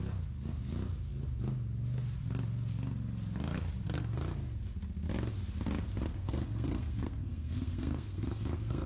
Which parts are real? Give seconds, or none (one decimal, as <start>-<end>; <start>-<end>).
0.0-6.1